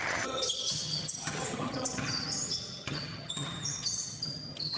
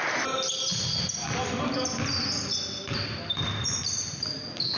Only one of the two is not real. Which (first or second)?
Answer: first